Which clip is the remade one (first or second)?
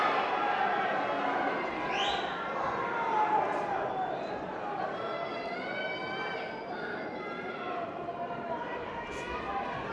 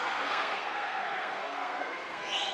second